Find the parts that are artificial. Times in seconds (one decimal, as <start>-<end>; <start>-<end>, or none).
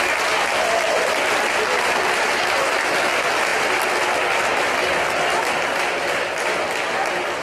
none